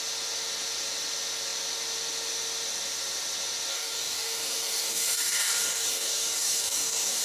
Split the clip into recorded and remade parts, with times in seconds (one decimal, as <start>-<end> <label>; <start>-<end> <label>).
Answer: 0.0-3.7 recorded; 3.7-7.2 remade